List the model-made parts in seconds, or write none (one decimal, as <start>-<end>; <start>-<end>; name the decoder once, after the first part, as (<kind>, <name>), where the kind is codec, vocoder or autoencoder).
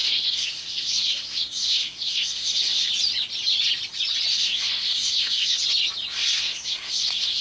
0.0-2.9 (codec, SNAC); 4.3-5.6; 6.1-7.4